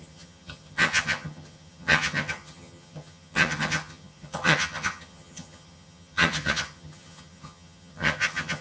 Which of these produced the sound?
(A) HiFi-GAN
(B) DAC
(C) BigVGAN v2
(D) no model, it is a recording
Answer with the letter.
A